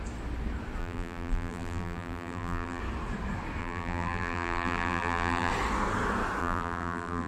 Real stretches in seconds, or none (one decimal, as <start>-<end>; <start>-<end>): 0.0-0.8; 2.8-3.6; 5.5-6.4